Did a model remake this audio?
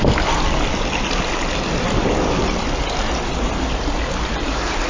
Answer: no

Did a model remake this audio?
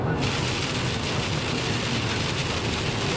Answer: no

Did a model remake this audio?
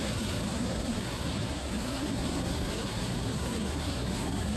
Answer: yes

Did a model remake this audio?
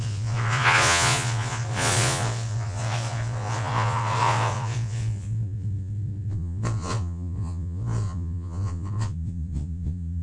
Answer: yes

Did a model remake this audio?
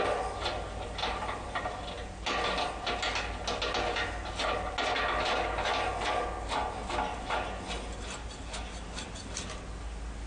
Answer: no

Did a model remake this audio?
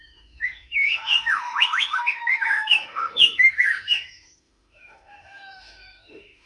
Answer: yes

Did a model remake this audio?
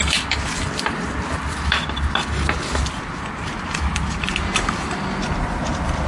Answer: yes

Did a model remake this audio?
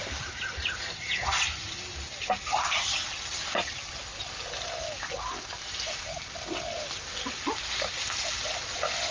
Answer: no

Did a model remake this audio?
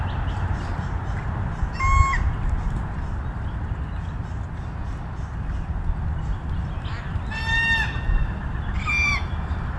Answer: no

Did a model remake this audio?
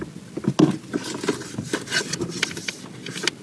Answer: no